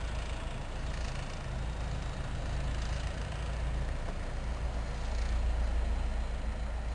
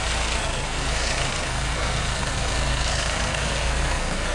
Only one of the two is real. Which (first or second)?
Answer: first